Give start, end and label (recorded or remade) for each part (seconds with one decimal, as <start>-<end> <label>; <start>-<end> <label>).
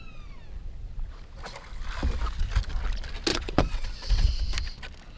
0.0-3.3 recorded; 3.3-4.3 remade; 4.3-5.2 recorded